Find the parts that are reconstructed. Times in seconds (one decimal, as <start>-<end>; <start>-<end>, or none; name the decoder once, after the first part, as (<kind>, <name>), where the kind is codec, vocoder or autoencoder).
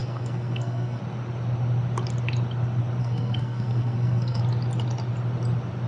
0.0-1.0 (codec, SNAC); 3.0-4.4